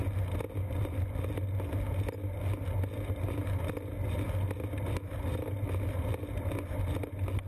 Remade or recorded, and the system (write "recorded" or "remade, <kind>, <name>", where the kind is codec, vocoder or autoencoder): recorded